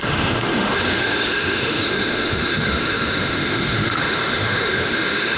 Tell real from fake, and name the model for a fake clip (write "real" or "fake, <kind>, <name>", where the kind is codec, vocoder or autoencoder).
fake, autoencoder, DAC-VAE